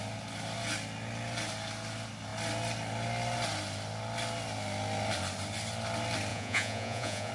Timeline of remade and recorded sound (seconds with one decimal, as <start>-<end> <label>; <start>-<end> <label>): 0.0-6.3 recorded; 6.3-7.3 remade